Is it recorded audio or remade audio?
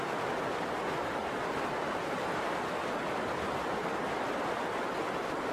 recorded